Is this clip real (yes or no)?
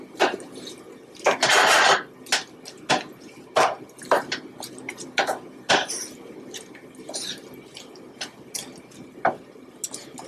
yes